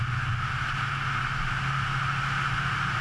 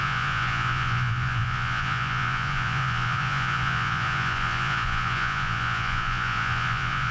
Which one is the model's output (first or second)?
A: second